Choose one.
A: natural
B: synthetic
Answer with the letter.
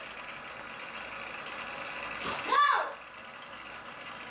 A